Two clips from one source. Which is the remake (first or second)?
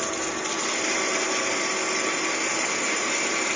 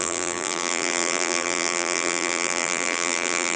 second